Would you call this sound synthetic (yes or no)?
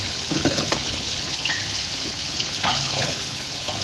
yes